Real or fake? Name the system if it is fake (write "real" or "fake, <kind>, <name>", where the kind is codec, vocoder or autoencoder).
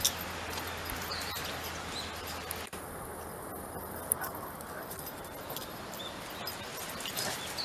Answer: real